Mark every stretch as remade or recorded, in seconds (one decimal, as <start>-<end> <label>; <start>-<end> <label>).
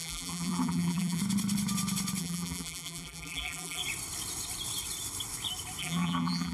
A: 0.0-1.2 remade; 1.2-2.2 recorded; 2.2-3.8 remade; 3.8-5.8 recorded; 5.8-6.5 remade